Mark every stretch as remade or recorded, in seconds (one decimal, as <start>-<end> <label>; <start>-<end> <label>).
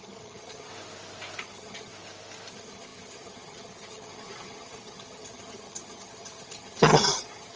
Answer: 0.0-0.7 remade; 0.7-1.4 recorded; 1.4-1.9 remade; 1.9-2.5 recorded; 2.5-7.6 remade